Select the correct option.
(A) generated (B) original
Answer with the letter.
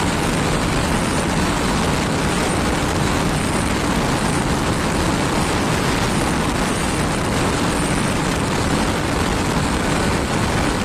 B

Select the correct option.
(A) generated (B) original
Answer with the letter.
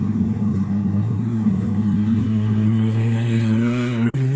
A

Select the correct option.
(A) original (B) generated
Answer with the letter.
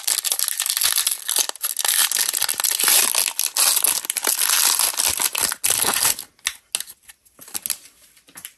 A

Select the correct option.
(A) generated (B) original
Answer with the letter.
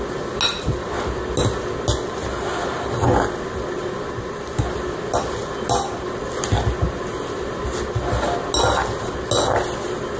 B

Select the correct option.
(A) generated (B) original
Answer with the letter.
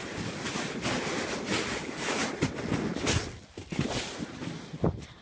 B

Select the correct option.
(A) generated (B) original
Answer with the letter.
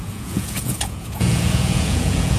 A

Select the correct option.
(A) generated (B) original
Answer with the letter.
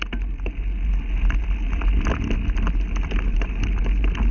B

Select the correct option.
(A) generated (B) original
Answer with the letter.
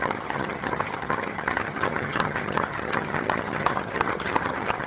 A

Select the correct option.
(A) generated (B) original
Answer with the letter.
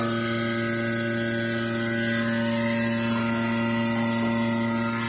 B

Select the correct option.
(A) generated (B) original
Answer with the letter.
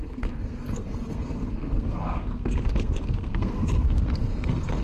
A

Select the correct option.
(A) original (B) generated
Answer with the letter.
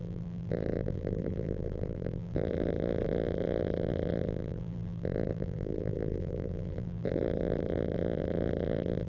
B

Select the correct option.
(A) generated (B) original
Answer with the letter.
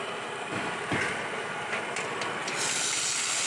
B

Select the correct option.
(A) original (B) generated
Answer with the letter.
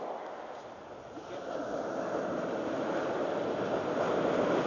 A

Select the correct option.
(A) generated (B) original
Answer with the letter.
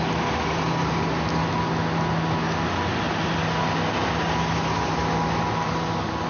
B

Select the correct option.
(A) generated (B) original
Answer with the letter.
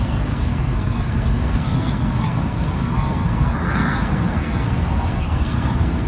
A